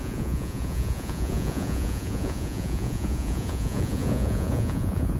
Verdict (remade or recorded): remade